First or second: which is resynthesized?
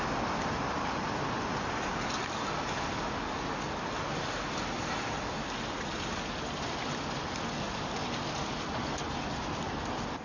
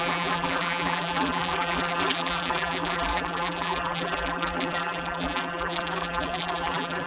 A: second